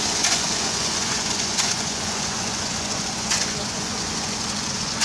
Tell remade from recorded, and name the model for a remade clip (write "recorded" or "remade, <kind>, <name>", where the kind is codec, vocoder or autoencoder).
remade, vocoder, Vocos